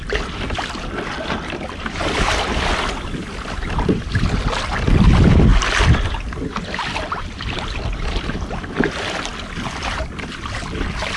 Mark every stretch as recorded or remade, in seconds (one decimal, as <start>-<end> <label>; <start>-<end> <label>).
0.0-5.5 remade; 5.5-6.2 recorded; 6.2-9.3 remade; 9.3-10.3 recorded; 10.3-11.2 remade